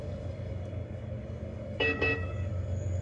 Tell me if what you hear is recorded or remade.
remade